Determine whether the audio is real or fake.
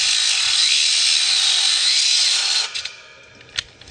real